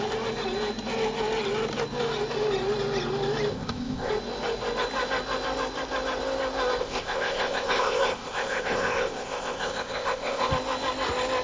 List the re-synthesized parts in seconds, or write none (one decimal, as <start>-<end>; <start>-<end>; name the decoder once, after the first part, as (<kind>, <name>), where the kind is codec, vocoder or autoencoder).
3.5-4.1 (codec, ZipCodec); 6.8-10.5